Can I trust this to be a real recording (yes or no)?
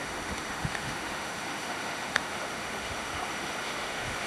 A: no